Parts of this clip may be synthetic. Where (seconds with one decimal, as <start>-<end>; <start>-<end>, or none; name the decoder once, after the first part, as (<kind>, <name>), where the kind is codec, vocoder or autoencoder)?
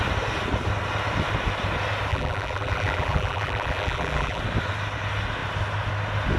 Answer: 2.1-4.4 (vocoder, BigVGAN v2)